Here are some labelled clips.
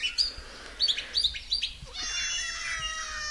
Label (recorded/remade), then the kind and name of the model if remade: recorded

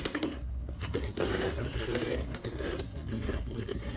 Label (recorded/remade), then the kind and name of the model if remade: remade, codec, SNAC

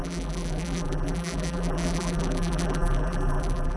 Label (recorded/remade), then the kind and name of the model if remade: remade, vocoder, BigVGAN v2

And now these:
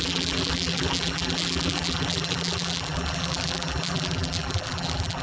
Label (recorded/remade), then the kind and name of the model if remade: remade, vocoder, BigVGAN v2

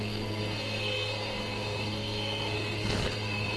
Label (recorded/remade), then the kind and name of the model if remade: remade, codec, SNAC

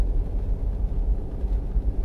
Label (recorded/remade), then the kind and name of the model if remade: recorded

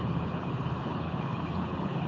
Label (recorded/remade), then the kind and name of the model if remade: remade, codec, HILCodec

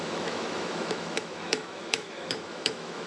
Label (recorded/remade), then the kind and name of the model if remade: remade, autoencoder, DAC-VAE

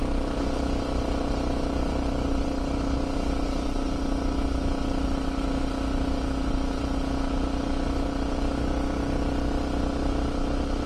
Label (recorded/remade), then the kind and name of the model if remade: recorded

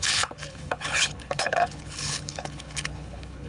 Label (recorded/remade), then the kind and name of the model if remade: remade, codec, HILCodec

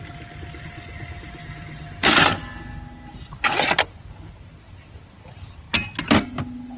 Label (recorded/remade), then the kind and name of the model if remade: recorded